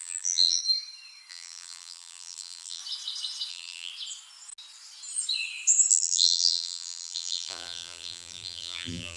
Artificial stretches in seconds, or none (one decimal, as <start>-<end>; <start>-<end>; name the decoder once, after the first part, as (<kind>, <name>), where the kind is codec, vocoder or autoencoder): 0.0-0.6 (vocoder, BigVGAN v2); 1.3-2.8; 3.5-3.9; 5.9-9.2